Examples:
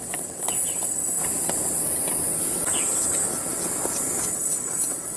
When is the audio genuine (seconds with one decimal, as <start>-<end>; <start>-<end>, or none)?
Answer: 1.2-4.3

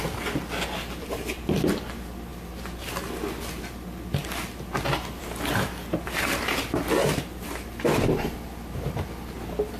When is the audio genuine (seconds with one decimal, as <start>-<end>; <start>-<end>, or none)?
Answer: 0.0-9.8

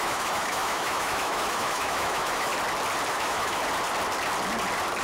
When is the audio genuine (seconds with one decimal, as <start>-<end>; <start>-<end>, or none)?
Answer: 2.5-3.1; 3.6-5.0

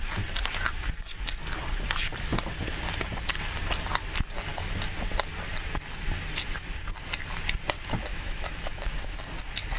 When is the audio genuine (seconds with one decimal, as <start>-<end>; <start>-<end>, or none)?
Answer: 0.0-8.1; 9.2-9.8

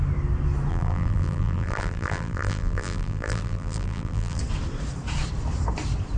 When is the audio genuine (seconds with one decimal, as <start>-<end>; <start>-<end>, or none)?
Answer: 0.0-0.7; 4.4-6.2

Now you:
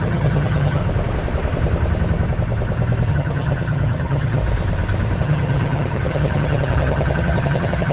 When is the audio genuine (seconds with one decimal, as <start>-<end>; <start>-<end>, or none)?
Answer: 0.8-3.1; 4.4-5.2